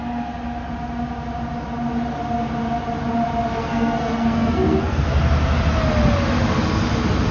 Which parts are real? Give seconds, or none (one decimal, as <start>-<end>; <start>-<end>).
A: 0.0-3.6; 5.2-7.3